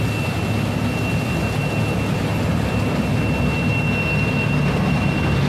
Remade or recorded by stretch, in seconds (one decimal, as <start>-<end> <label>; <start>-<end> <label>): 0.0-5.5 recorded